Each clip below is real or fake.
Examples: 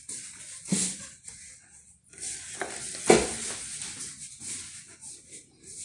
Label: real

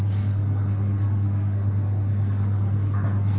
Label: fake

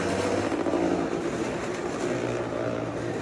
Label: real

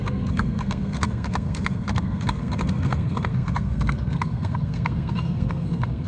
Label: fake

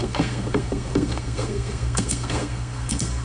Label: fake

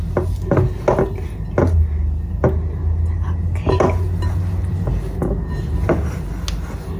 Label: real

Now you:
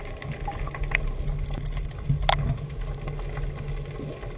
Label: real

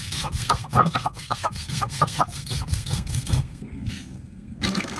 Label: fake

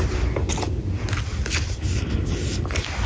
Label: real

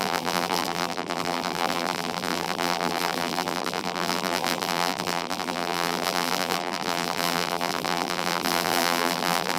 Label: fake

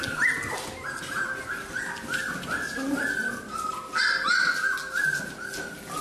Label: real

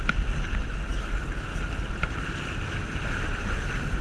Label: real